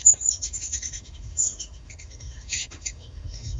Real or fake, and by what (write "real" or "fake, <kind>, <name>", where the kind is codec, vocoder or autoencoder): fake, autoencoder, DAC-VAE